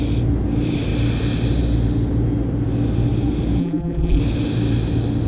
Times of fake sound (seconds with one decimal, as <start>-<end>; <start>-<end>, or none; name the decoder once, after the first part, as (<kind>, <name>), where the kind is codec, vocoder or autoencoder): 3.6-4.2 (vocoder, BigVGAN v2)